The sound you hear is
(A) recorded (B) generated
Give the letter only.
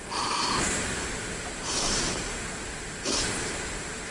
B